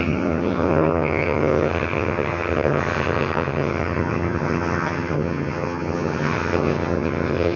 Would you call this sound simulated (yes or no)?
yes